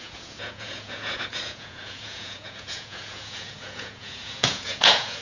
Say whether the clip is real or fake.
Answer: fake